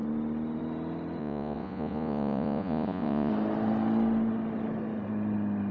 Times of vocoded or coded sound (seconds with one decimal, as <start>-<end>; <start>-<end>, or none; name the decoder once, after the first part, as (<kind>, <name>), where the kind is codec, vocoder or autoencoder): 1.2-3.3 (vocoder, Vocos)